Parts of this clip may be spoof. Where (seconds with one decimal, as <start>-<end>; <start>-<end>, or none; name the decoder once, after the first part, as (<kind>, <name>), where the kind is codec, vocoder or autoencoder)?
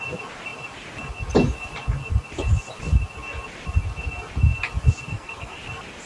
5.1-5.6 (codec, SNAC)